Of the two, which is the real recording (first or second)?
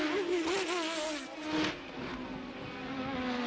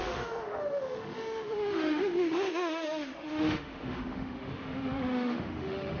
first